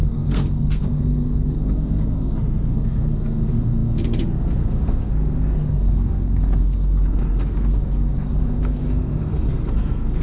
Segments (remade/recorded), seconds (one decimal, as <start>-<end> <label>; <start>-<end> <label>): 0.0-10.2 remade

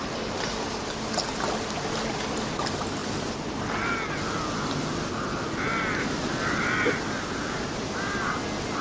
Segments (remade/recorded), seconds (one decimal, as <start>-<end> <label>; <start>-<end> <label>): 0.0-8.8 recorded

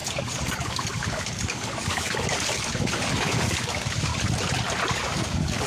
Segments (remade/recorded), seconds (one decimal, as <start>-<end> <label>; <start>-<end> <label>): 0.0-4.1 remade; 4.1-4.9 recorded; 4.9-5.7 remade

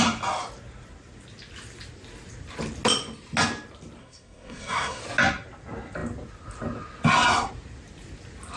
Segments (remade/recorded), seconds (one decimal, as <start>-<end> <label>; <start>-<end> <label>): 0.0-4.0 recorded; 4.0-5.0 remade; 5.0-8.6 recorded